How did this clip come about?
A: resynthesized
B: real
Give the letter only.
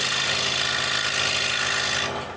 B